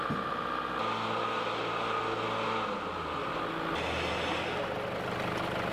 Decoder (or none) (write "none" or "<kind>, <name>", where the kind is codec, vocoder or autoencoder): none